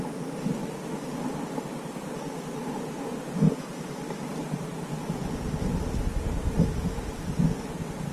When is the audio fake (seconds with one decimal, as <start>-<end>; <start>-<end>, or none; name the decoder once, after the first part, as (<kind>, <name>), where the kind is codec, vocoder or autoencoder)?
none